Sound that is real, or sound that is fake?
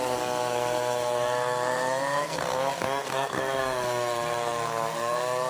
fake